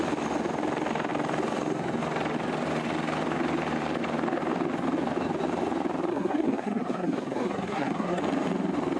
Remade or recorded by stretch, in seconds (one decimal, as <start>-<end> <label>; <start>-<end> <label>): 0.0-6.1 recorded; 6.1-8.2 remade; 8.2-9.0 recorded